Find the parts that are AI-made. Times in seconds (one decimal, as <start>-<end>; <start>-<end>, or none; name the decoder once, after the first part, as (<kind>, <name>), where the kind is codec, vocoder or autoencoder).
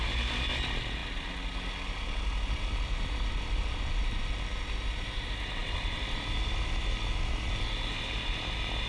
none